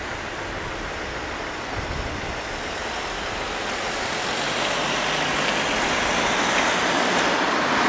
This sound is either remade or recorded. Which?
recorded